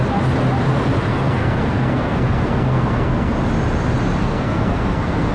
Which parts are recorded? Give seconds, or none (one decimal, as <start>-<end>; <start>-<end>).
0.0-1.1; 3.3-4.2